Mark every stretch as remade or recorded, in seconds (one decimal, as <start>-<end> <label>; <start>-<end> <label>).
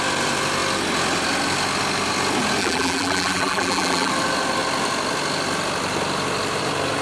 0.0-2.6 recorded; 2.6-4.1 remade; 4.1-7.0 recorded